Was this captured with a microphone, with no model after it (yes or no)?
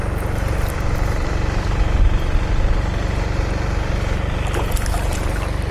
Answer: yes